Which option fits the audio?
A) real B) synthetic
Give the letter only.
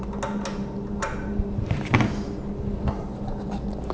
A